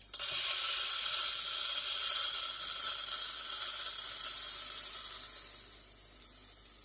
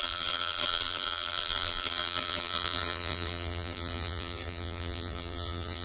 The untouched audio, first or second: first